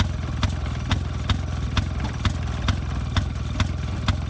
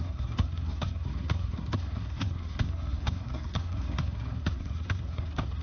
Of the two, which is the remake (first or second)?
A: second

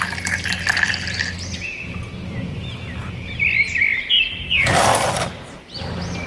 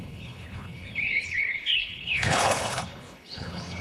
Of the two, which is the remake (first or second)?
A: second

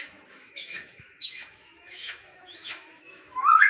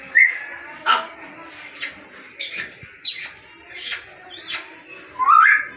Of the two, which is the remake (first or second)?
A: first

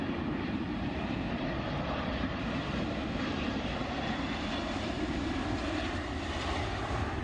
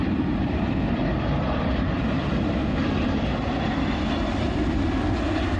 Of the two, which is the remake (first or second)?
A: first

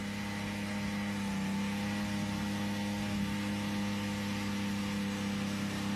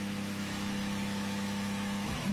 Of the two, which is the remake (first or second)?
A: second